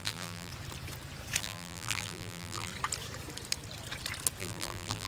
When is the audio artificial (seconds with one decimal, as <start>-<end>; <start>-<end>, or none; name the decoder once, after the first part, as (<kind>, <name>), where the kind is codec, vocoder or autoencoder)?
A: 0.0-0.5 (vocoder, BigVGAN v2); 1.4-2.7; 4.4-5.1